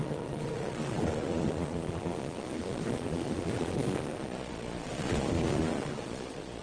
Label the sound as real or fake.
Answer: fake